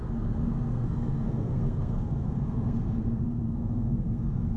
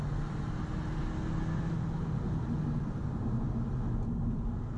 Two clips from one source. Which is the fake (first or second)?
first